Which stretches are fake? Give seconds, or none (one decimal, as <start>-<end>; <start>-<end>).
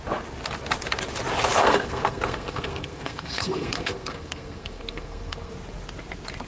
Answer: 1.6-5.5